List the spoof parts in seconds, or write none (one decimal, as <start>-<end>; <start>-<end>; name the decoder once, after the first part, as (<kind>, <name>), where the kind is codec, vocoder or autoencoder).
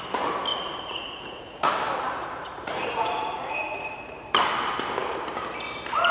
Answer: 0.5-1.7 (vocoder, Vocos); 2.2-4.3